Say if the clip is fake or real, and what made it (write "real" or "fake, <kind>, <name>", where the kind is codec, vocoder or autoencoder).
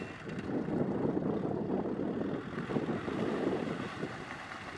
real